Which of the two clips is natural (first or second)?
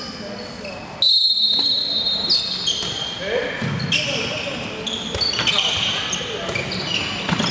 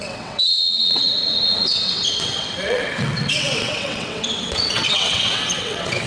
first